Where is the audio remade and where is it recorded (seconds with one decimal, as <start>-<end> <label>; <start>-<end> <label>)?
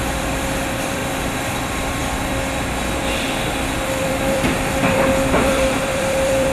0.0-1.0 remade; 1.0-1.5 recorded; 1.5-2.0 remade; 2.0-4.0 recorded; 4.0-6.5 remade